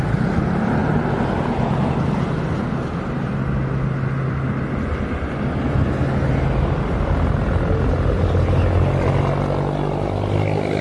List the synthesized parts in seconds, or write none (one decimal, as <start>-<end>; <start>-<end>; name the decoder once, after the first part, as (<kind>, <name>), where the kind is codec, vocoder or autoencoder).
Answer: none